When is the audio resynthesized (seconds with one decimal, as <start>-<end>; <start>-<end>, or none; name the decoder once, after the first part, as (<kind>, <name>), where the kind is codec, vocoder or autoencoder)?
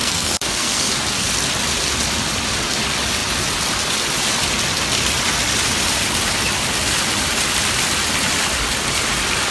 0.0-0.9 (codec, SNAC)